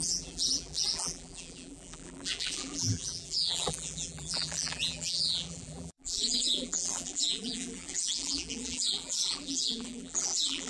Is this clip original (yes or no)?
no